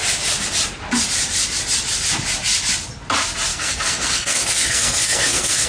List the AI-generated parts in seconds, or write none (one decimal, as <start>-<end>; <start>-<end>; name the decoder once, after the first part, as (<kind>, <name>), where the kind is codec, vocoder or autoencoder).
3.5-5.7 (codec, SNAC)